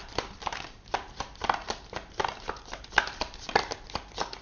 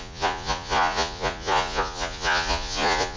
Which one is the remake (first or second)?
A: second